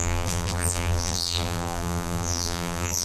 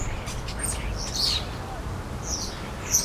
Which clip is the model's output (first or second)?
first